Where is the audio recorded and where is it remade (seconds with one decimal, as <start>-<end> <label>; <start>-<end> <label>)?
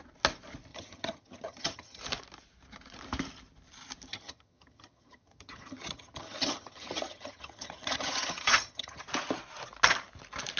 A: 0.0-0.7 recorded; 0.7-2.0 remade; 2.0-4.1 recorded; 4.1-9.0 remade; 9.0-10.6 recorded